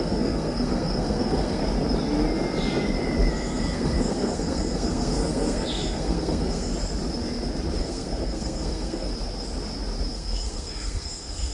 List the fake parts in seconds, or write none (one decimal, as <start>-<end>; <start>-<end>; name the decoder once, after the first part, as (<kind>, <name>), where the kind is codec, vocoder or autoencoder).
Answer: 0.0-1.6 (codec, SNAC); 3.3-6.7; 7.8-9.1; 10.1-11.5